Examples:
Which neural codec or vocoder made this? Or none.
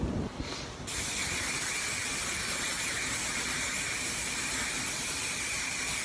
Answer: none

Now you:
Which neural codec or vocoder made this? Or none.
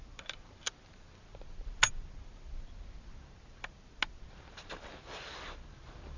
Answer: none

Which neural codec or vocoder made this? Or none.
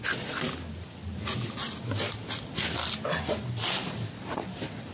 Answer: none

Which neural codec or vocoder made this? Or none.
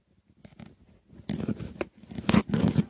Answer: none